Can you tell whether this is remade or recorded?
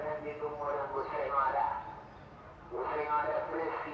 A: recorded